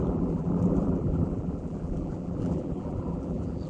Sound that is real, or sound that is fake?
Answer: fake